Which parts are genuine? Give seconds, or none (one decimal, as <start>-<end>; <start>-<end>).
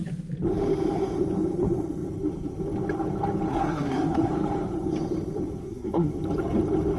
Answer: 0.0-3.5; 4.3-5.6; 6.1-7.0